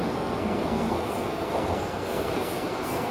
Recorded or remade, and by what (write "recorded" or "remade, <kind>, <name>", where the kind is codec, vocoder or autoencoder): remade, codec, SNAC